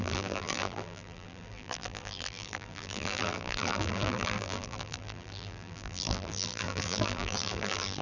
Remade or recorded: remade